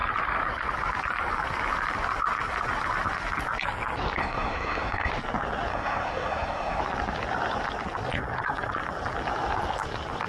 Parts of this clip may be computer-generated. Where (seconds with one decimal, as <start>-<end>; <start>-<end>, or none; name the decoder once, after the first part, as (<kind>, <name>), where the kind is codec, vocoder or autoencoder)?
4.2-5.1 (codec, SNAC); 5.7-6.8